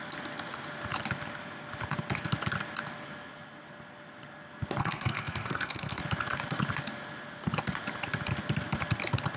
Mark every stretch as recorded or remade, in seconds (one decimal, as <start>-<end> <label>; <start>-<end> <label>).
0.0-4.8 recorded; 4.8-6.0 remade; 6.0-9.4 recorded